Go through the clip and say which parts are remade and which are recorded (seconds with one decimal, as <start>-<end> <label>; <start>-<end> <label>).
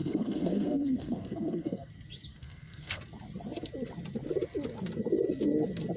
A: 0.0-1.9 remade; 1.9-2.3 recorded; 2.3-3.0 remade; 3.0-6.0 recorded